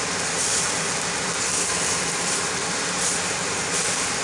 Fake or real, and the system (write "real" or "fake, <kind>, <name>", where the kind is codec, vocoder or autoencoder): real